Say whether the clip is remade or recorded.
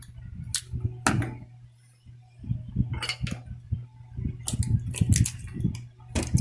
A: recorded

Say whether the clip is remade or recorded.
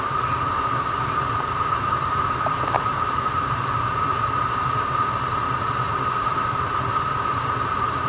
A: remade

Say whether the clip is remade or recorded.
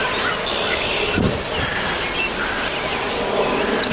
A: recorded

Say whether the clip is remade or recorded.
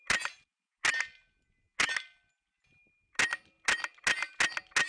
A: recorded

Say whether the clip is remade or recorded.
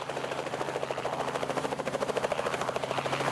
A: remade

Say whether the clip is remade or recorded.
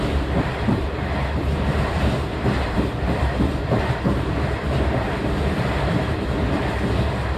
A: remade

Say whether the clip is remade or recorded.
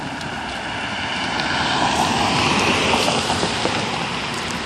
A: recorded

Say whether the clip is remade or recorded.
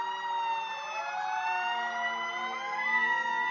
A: recorded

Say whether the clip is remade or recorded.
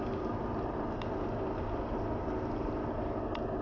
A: recorded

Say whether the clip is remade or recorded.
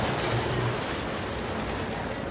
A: recorded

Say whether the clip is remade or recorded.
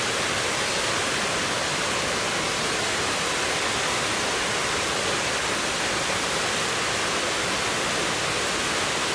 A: recorded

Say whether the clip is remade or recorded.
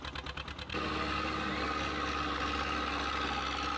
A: recorded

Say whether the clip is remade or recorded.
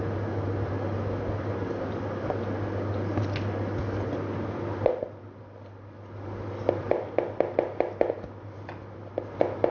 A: recorded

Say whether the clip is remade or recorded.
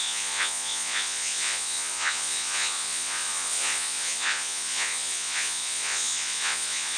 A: remade